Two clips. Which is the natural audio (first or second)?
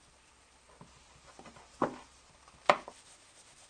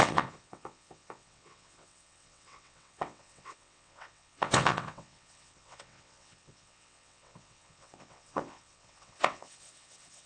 first